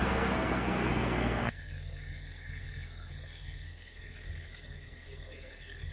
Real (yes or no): no